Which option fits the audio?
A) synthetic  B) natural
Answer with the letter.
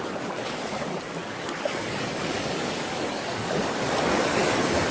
A